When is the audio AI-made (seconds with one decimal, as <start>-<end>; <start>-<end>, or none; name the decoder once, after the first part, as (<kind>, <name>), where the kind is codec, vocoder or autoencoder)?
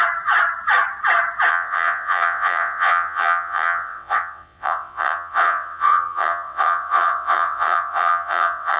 1.5-8.8 (vocoder, WaveNeXt)